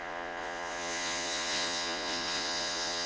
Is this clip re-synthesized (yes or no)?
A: yes